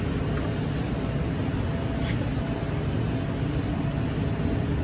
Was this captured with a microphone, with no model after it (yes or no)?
yes